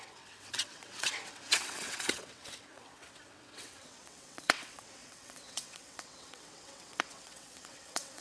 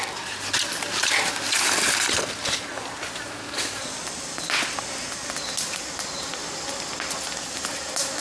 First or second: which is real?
second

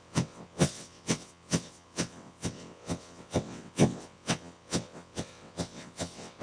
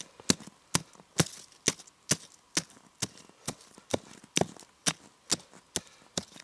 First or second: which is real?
second